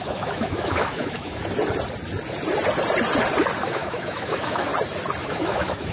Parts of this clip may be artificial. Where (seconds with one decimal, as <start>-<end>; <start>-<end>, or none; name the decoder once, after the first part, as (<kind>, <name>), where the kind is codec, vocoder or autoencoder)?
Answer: 0.0-1.4 (autoencoder, DAC-VAE); 3.6-4.7; 5.2-5.9